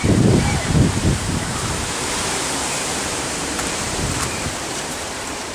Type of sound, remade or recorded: remade